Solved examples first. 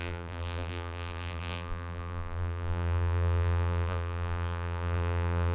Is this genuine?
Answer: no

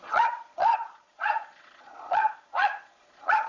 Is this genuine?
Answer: no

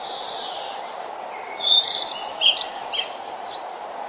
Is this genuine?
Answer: yes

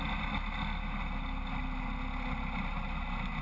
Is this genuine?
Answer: yes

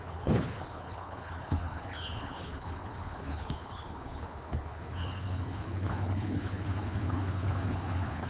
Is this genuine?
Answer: no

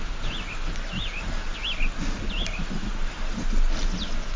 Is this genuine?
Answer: yes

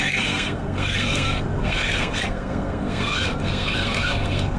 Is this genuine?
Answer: no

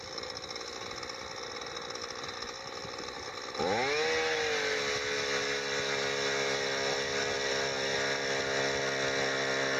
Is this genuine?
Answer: yes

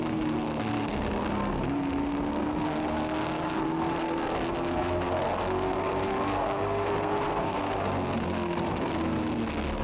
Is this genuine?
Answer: no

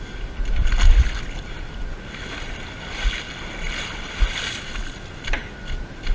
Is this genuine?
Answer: yes